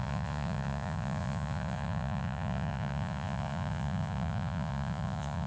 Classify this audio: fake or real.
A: fake